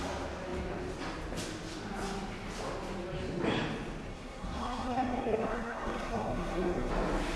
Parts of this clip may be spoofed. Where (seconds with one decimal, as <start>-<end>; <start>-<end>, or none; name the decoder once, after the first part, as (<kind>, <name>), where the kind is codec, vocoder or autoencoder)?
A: 4.1-6.9 (codec, SNAC)